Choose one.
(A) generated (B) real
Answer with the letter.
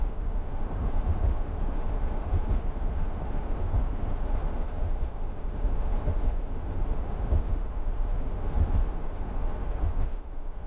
A